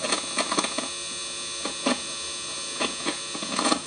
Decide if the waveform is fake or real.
fake